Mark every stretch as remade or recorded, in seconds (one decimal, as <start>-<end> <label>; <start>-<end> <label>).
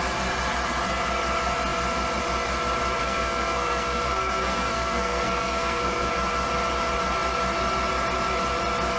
0.0-3.0 recorded; 3.0-6.1 remade; 6.1-9.0 recorded